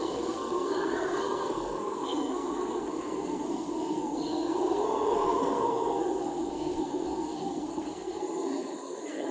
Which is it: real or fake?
fake